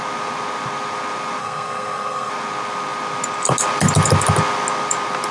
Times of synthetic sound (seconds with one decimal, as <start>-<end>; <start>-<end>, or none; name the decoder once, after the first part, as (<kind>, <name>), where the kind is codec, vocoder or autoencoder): 1.4-2.3 (codec, SNAC)